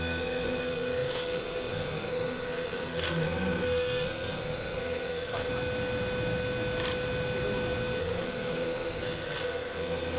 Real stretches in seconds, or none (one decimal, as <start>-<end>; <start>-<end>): 5.5-8.0